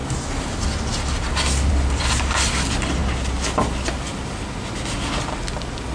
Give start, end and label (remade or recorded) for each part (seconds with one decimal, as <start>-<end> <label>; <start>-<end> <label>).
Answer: 0.0-5.9 recorded

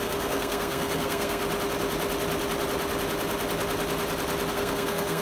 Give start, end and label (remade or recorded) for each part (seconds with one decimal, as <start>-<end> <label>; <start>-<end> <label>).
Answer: 0.0-1.4 remade; 1.4-4.5 recorded; 4.5-5.2 remade

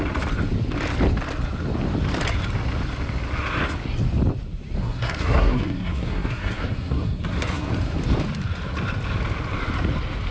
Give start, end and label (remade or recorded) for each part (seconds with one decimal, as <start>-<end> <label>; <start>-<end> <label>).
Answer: 0.0-4.8 recorded; 4.8-7.7 remade; 7.7-10.3 recorded

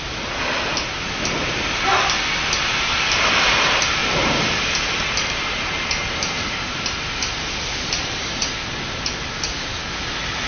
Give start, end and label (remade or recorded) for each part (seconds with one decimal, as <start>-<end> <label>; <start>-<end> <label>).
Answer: 0.0-4.0 recorded; 4.0-8.6 remade; 8.6-10.5 recorded